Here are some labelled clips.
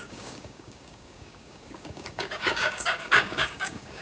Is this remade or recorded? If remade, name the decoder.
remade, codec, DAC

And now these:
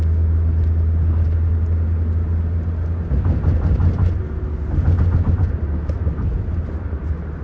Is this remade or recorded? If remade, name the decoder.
recorded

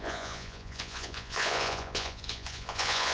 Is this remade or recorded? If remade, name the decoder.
remade, vocoder, Vocos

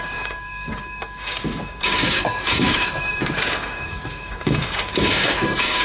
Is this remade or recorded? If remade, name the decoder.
remade, codec, DAC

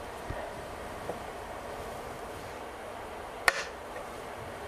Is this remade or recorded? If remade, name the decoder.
remade, vocoder, BigVGAN v2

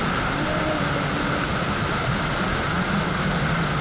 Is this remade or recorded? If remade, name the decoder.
recorded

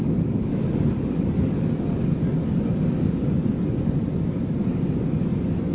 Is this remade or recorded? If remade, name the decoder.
remade, codec, DAC